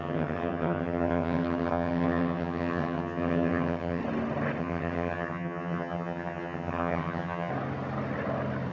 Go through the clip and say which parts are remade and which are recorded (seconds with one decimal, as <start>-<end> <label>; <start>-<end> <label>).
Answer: 0.0-4.0 remade; 4.0-4.6 recorded; 4.6-7.5 remade; 7.5-8.7 recorded